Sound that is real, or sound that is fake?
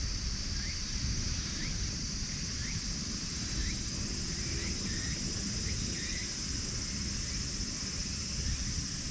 real